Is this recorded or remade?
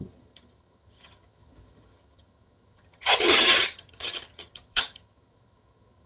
remade